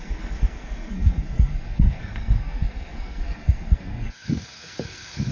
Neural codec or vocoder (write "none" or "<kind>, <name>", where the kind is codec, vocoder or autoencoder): codec, SNAC